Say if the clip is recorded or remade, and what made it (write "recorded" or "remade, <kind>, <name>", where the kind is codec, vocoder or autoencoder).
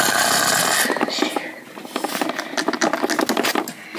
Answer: recorded